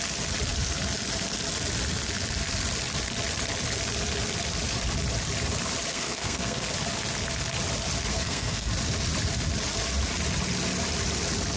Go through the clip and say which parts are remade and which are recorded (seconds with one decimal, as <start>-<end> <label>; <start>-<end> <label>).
0.0-5.9 recorded; 5.9-6.6 remade; 6.6-8.1 recorded; 8.1-8.7 remade; 8.7-11.6 recorded